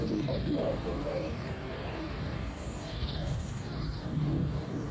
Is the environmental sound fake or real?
fake